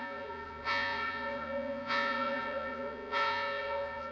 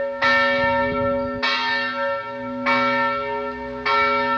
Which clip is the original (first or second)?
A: second